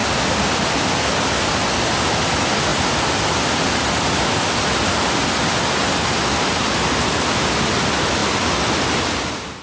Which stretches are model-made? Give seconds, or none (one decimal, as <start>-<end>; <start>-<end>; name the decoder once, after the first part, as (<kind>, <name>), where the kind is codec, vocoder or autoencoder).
none